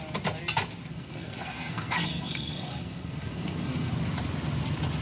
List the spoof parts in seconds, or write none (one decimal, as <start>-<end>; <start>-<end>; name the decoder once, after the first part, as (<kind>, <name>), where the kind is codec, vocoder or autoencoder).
0.9-3.9 (codec, SNAC)